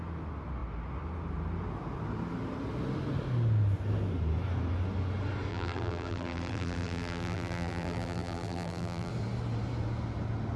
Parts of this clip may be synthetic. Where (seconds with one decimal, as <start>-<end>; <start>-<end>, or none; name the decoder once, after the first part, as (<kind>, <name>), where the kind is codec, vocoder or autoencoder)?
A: 5.5-9.1 (vocoder, BigVGAN v2)